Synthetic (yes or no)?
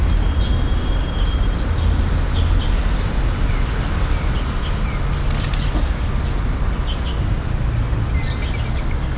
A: no